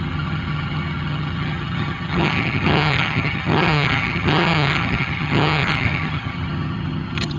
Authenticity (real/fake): fake